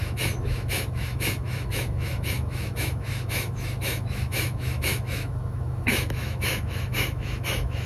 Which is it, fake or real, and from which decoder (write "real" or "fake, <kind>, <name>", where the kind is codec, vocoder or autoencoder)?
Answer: fake, autoencoder, DAC-VAE